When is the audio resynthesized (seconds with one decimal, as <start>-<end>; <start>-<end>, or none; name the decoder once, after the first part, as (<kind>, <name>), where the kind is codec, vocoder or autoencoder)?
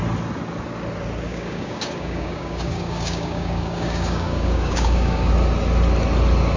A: 1.3-5.3 (codec, DAC)